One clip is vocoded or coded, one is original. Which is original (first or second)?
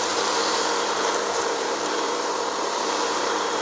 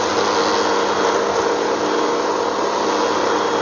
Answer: second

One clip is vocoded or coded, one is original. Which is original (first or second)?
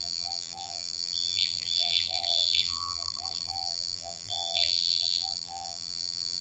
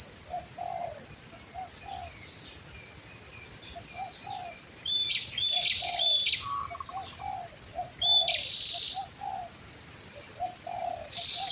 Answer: second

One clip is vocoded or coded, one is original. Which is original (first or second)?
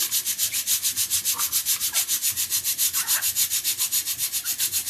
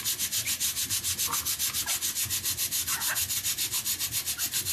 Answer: second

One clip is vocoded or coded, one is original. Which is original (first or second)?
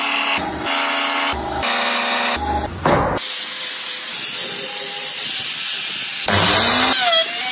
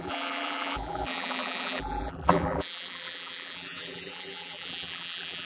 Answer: first